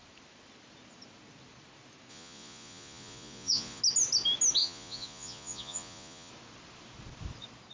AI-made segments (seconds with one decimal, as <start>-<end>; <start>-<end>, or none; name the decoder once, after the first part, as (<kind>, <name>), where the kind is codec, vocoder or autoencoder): 2.1-3.8 (vocoder, Vocos); 4.6-6.3